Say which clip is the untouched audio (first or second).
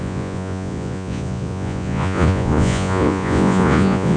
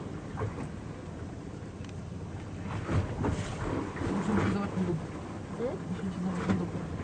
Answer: second